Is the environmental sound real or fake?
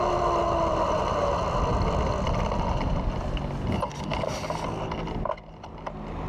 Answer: real